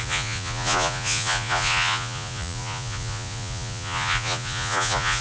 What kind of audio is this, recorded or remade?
remade